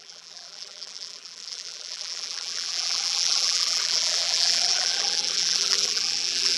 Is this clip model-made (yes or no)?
yes